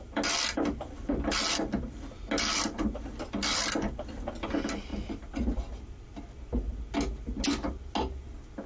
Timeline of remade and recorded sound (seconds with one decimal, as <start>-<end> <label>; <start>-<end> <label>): 0.0-8.7 recorded